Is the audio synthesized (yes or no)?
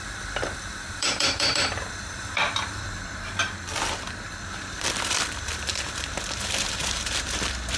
yes